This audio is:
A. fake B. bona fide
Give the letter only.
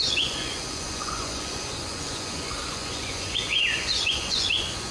A